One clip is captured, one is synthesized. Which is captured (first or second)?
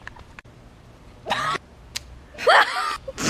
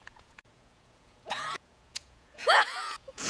first